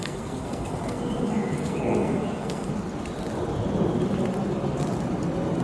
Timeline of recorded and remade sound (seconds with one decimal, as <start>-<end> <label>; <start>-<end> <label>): 0.0-2.7 remade; 2.7-5.6 recorded